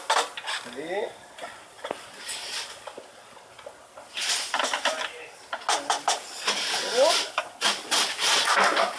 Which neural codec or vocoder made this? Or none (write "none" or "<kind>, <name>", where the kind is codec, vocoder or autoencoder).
none